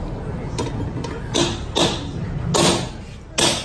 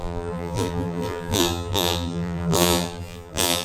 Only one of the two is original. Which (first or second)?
first